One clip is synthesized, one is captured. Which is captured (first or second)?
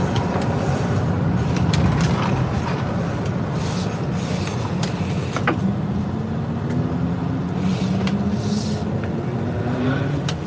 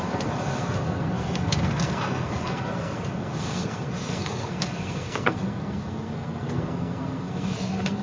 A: first